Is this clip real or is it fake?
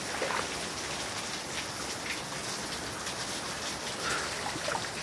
real